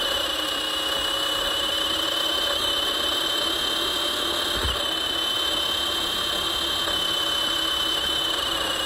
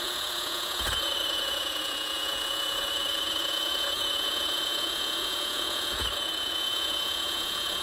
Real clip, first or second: first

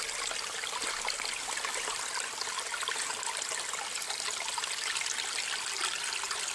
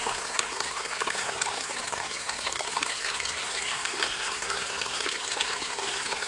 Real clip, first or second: first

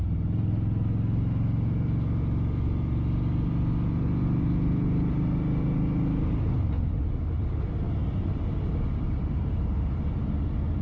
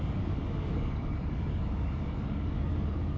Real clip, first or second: first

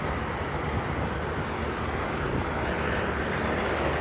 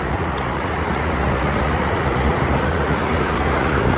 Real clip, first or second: first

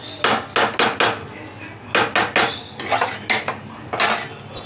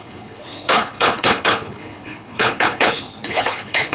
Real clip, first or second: first